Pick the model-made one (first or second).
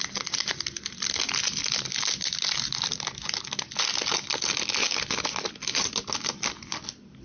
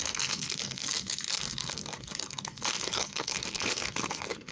second